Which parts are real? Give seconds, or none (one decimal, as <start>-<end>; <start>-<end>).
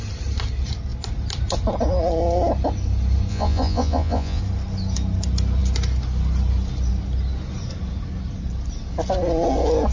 0.0-3.3; 4.4-9.9